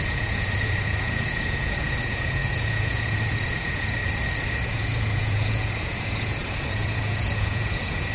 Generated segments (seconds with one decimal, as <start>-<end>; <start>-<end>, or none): 0.0-4.0; 4.6-8.1